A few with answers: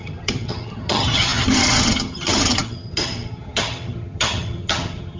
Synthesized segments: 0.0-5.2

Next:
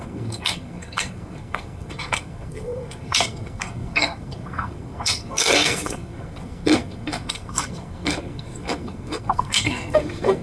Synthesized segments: 0.0-10.4

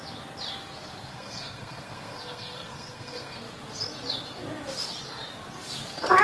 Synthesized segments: 1.1-3.4

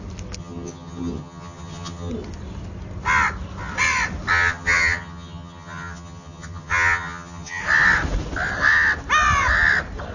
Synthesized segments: 0.4-2.1; 4.3-7.6

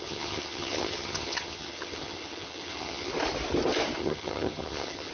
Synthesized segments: 0.0-3.1; 4.0-5.1

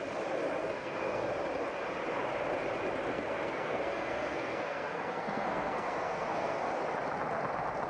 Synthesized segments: 0.6-1.2; 3.1-6.7

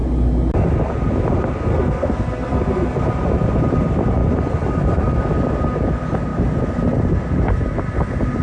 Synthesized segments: 1.7-3.1